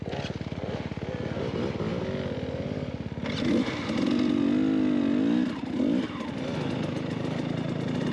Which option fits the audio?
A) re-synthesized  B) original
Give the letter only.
B